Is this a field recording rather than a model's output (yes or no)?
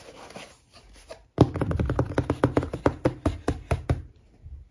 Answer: yes